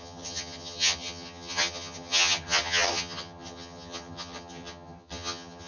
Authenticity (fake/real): fake